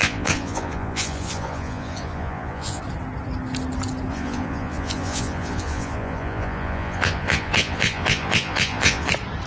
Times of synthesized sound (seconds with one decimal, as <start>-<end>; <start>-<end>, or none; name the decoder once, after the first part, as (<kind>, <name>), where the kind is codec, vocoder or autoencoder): 0.0-2.8 (vocoder, Vocos); 4.1-9.1